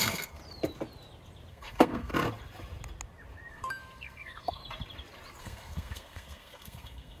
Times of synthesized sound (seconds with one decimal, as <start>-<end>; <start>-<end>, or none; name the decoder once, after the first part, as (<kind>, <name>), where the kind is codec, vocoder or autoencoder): 0.0-0.4 (codec, SNAC); 1.5-2.1; 3.5-4.6; 5.4-7.2